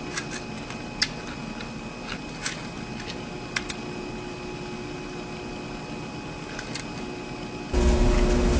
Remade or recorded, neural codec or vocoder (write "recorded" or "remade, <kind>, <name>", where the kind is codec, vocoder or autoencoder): recorded